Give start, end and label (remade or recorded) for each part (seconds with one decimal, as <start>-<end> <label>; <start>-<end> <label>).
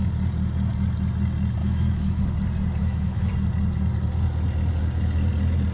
0.0-1.6 recorded; 1.6-2.2 remade; 2.2-2.8 recorded; 2.8-3.3 remade; 3.3-5.7 recorded